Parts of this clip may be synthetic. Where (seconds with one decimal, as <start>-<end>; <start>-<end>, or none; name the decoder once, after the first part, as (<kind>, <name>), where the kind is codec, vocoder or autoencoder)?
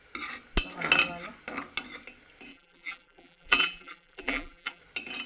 2.5-4.8 (vocoder, BigVGAN v2)